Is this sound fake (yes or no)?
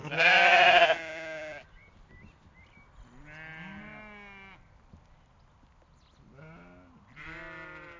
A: no